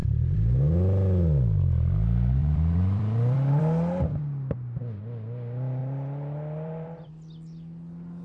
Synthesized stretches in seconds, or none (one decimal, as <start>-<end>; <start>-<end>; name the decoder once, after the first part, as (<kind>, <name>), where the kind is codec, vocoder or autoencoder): 0.0-0.7 (vocoder, BigVGAN v2); 2.4-3.6; 5.8-7.1